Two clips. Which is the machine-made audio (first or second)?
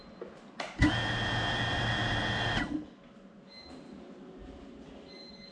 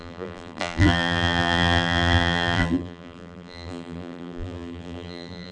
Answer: second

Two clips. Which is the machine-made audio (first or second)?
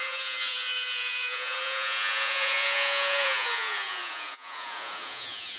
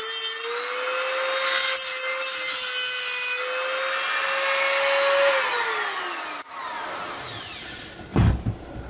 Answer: first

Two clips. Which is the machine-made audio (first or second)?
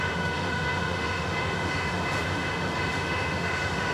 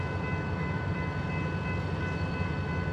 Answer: first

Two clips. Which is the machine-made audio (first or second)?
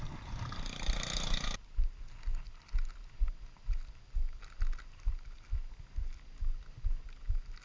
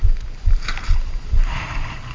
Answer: second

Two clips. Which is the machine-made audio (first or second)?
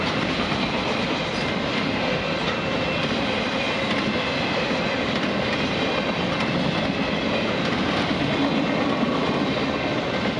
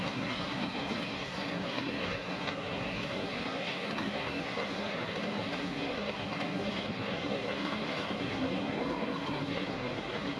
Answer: second